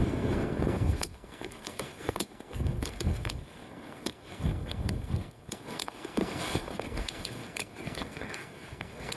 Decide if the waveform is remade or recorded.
remade